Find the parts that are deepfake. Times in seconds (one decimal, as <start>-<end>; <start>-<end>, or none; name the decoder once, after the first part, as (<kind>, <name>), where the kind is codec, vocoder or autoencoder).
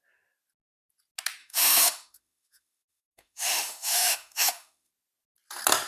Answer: 1.4-4.9 (autoencoder, DAC-VAE)